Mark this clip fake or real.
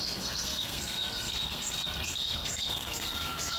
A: fake